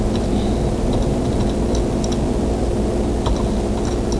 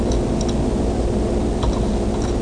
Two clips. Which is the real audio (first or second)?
first